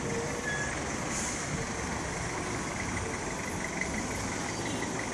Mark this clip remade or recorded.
recorded